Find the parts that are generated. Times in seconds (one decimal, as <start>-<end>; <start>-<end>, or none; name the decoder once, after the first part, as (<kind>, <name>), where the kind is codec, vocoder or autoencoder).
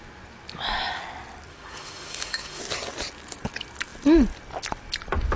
1.5-2.6 (autoencoder, DAC-VAE)